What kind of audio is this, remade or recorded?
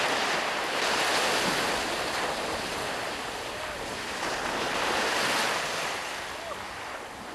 recorded